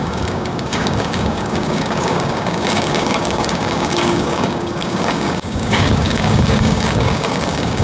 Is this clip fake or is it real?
fake